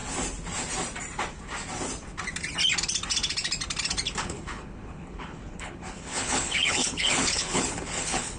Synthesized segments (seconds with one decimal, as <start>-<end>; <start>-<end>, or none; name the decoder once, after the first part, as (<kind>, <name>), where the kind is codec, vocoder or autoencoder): 4.2-8.4 (codec, HILCodec)